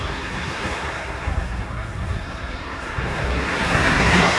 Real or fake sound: fake